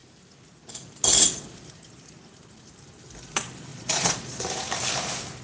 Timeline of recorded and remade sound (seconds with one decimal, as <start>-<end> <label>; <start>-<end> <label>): 0.0-3.7 recorded; 3.7-4.4 remade; 4.4-5.4 recorded